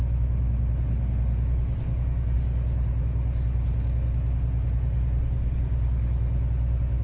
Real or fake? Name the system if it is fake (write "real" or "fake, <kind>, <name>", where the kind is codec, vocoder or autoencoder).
real